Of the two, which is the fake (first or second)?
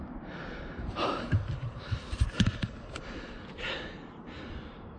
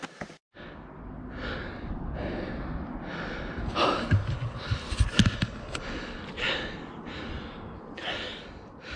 first